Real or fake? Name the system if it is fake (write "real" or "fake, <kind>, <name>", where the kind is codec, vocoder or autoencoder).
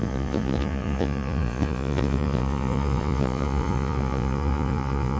fake, vocoder, Vocos